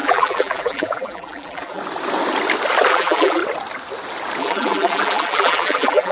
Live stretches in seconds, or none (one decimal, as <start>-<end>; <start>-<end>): 1.8-2.9; 3.4-4.4